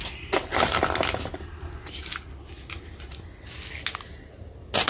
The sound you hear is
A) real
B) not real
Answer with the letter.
A